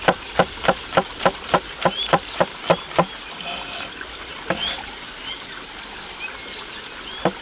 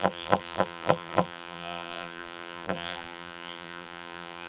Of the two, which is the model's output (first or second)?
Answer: second